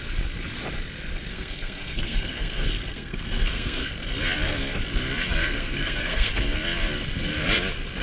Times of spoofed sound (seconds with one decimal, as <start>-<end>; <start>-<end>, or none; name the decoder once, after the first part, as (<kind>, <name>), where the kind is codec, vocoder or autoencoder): 1.3-3.9 (codec, SNAC); 5.4-6.3